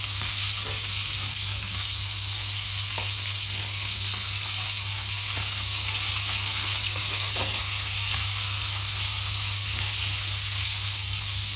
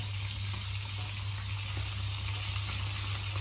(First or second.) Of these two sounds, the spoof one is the first